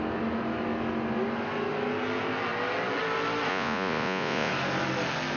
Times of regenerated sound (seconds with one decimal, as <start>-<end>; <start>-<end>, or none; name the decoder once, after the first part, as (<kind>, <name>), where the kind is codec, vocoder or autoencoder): 3.5-4.5 (vocoder, Vocos)